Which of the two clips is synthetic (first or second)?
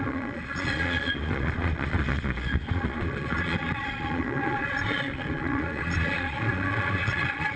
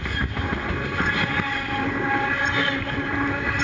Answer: first